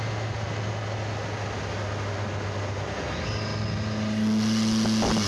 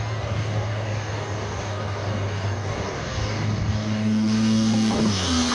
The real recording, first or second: first